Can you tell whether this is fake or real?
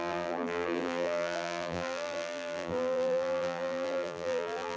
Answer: fake